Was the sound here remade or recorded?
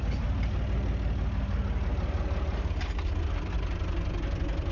recorded